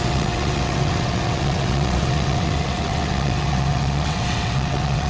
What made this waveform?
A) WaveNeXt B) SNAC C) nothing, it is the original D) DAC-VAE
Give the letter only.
A